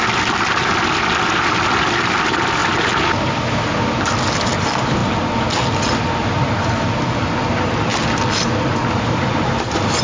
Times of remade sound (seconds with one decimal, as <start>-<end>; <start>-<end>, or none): none